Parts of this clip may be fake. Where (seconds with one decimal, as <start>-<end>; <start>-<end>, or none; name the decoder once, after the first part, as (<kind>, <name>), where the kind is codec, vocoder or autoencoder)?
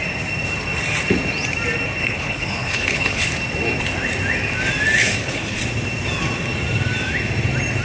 2.0-3.3 (codec, HILCodec); 5.0-5.6